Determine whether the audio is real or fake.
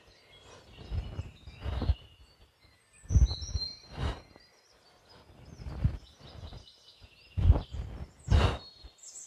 real